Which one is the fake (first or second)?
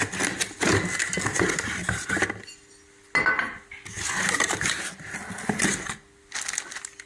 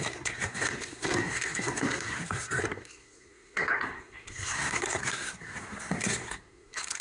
second